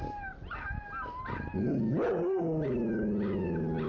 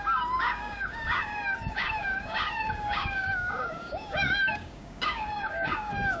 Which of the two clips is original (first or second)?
first